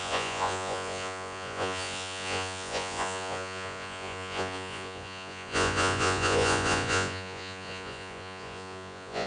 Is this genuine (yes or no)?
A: no